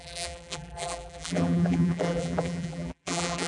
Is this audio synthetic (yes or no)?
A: yes